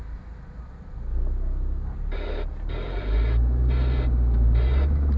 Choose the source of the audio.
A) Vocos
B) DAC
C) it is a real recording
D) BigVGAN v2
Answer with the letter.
C